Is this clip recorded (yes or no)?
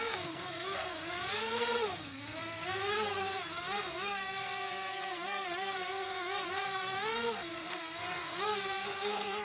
no